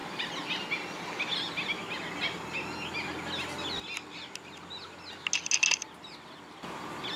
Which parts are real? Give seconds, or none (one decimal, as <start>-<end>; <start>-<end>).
0.0-7.2